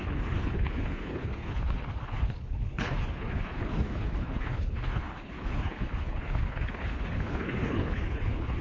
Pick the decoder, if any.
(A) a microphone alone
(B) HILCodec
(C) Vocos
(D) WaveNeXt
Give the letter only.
B